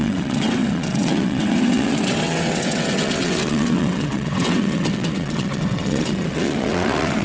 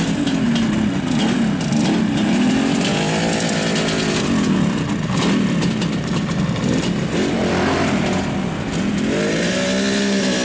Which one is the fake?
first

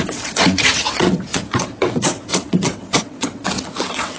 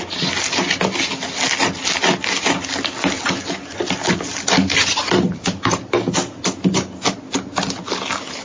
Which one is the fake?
first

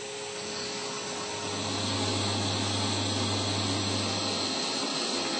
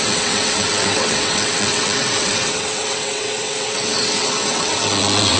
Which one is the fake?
second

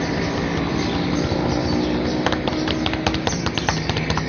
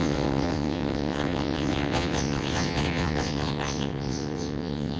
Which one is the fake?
second